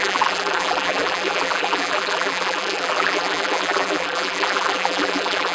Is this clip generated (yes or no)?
yes